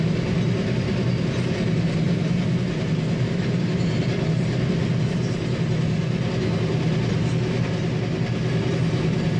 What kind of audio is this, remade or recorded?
recorded